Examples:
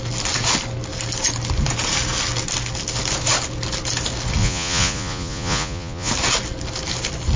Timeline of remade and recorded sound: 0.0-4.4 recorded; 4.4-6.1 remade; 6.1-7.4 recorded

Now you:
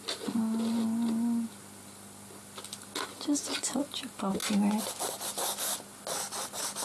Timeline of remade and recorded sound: 0.0-6.8 recorded

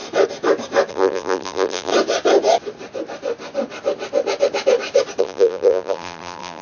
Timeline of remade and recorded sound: 0.0-0.9 recorded; 0.9-1.9 remade; 1.9-5.2 recorded; 5.2-6.6 remade

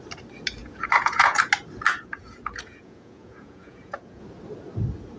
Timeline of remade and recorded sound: 0.0-0.6 recorded; 0.6-1.5 remade; 1.5-1.9 recorded; 1.9-4.2 remade; 4.2-5.2 recorded